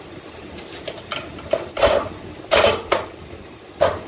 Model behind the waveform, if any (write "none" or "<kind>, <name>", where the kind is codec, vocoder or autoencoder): none